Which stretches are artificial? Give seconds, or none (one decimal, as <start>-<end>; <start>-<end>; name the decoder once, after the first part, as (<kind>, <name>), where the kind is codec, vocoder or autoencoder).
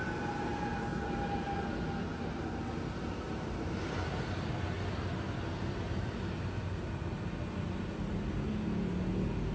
none